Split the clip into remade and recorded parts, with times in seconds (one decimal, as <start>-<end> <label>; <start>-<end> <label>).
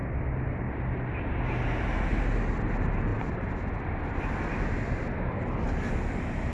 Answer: 0.0-3.1 recorded; 3.1-4.2 remade; 4.2-6.5 recorded